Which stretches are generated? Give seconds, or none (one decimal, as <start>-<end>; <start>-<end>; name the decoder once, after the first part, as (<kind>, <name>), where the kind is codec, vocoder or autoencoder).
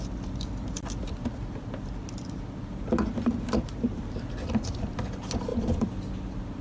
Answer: none